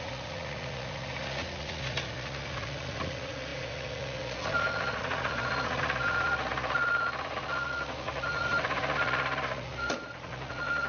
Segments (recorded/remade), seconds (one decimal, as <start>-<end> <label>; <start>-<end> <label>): 0.0-10.9 remade